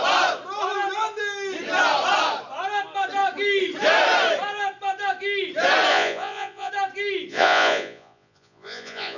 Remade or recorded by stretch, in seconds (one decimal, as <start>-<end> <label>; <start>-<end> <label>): 0.0-5.9 recorded; 5.9-6.7 remade; 6.7-7.3 recorded; 7.3-9.2 remade